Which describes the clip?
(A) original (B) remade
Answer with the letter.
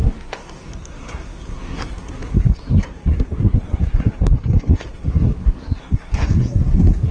B